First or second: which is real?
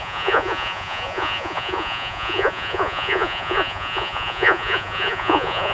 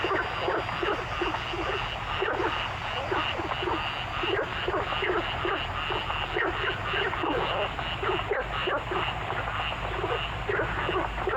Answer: second